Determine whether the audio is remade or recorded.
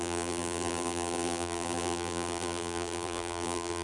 remade